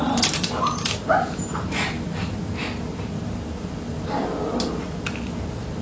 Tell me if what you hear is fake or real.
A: real